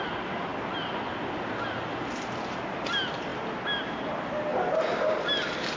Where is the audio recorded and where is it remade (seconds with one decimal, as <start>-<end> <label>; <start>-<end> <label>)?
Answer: 0.0-5.8 recorded